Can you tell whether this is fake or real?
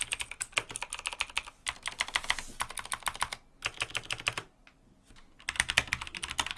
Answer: real